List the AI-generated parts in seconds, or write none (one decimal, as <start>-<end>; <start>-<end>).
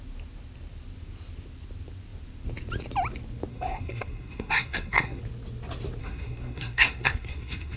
3.5-5.2; 6.0-7.8